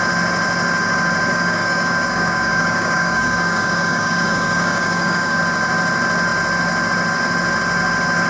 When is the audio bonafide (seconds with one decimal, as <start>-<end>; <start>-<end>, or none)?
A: 0.0-1.3; 5.4-8.3